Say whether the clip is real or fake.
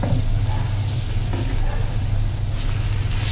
real